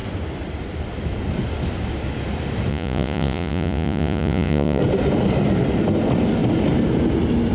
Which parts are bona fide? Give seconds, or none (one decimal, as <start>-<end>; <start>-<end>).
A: 0.0-2.7; 4.8-7.5